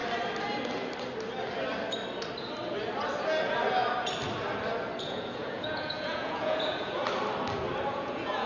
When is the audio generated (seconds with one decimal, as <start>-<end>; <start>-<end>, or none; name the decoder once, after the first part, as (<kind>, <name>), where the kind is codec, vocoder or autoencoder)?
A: 5.0-7.0 (vocoder, Vocos); 7.9-8.5